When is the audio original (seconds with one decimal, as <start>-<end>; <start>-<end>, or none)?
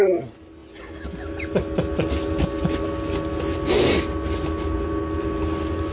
0.0-5.9